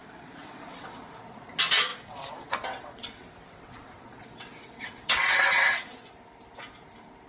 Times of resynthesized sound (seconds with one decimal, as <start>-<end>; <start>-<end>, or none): 0.0-1.0; 1.9-6.1